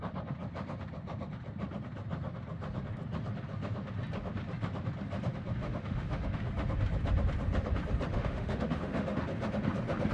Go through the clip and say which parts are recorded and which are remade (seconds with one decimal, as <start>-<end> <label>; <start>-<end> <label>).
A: 0.0-5.6 recorded; 5.6-6.5 remade; 6.5-8.1 recorded; 8.1-9.2 remade; 9.2-10.1 recorded